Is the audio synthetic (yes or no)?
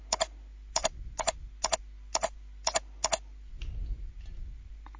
no